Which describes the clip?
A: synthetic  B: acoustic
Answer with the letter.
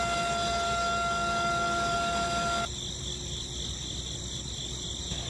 B